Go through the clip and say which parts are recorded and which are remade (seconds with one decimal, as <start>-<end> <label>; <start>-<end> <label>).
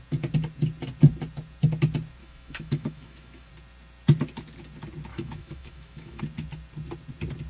0.0-2.2 recorded; 2.2-3.5 remade; 3.5-5.1 recorded; 5.1-6.2 remade; 6.2-7.5 recorded